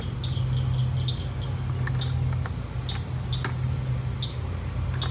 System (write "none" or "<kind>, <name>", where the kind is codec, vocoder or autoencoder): none